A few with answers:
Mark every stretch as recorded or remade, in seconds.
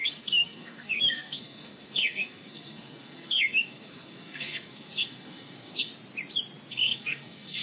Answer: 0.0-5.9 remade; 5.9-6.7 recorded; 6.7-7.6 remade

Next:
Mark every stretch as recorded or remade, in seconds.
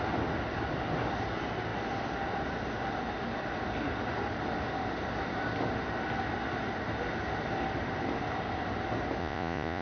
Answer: 0.0-9.2 recorded; 9.2-9.8 remade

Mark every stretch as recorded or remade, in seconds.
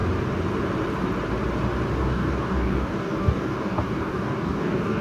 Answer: 0.0-2.0 recorded; 2.0-5.0 remade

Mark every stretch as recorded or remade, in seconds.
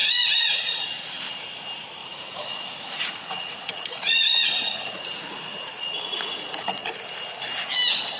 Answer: 0.0-1.2 remade; 1.2-2.0 recorded; 2.0-6.9 remade; 6.9-8.2 recorded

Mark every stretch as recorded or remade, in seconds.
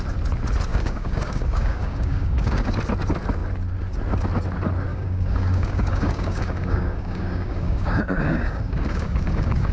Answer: 0.0-0.7 recorded; 0.7-2.8 remade; 2.8-4.9 recorded; 4.9-9.7 remade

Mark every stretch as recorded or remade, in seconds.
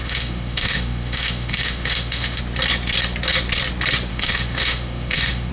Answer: 0.0-2.4 remade; 2.4-4.1 recorded; 4.1-5.5 remade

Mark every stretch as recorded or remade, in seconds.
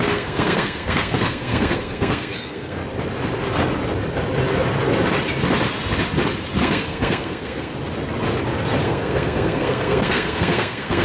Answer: 0.0-2.8 remade; 2.8-6.6 recorded; 6.6-7.7 remade; 7.7-8.8 recorded; 8.8-11.0 remade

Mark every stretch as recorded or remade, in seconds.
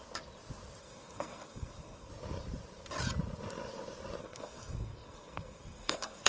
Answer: 0.0-0.8 recorded; 0.8-2.1 remade; 2.1-4.2 recorded; 4.2-6.3 remade